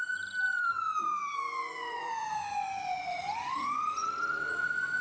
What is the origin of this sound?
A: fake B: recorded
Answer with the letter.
A